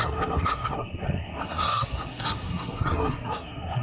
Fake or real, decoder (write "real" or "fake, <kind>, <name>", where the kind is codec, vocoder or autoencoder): fake, codec, SNAC